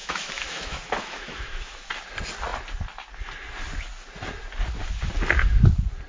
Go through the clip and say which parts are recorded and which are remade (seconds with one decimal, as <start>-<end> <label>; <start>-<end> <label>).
0.0-1.9 remade; 1.9-6.1 recorded